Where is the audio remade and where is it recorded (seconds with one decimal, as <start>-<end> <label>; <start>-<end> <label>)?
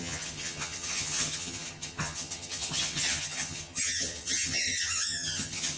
0.0-5.8 remade